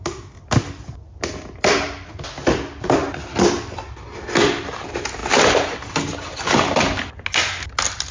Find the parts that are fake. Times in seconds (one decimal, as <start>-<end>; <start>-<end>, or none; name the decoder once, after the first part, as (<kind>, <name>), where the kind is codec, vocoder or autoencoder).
none